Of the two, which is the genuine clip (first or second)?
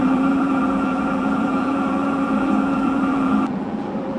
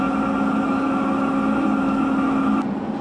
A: second